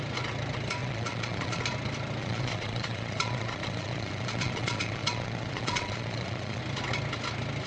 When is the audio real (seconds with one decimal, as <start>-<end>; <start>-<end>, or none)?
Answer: 0.0-0.8; 1.6-2.2; 6.6-7.7